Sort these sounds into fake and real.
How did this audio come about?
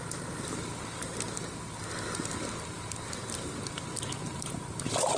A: real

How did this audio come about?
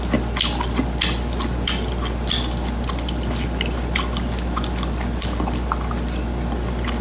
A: real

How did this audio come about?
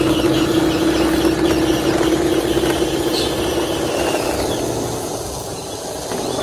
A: real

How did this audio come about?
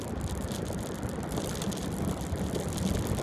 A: fake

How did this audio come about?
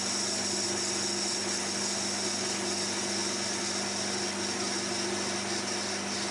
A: real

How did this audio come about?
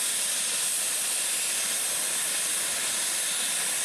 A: real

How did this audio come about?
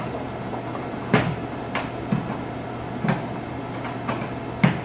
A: real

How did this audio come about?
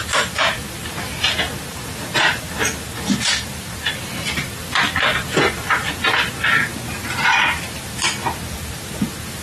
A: fake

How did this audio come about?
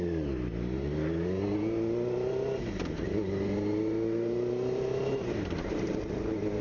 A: fake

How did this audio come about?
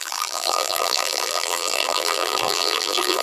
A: fake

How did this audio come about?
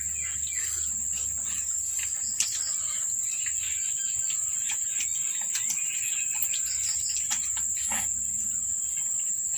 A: real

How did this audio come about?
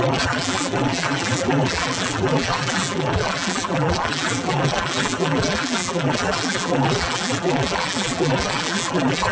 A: fake